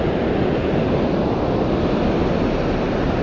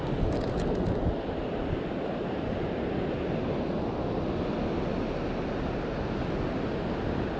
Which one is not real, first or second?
first